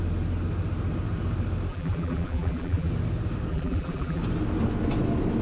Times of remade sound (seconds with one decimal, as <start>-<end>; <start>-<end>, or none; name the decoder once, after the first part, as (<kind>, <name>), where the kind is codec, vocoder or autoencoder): 1.7-2.9 (vocoder, BigVGAN v2); 3.5-4.2